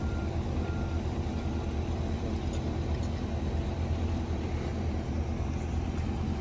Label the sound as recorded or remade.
recorded